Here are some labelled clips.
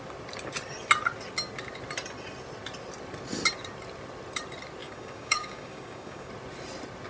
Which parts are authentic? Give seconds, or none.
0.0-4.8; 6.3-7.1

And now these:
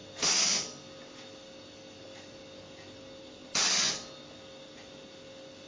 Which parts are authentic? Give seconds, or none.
0.0-5.7